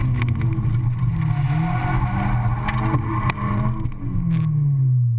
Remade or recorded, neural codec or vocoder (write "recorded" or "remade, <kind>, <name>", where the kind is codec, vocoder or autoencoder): recorded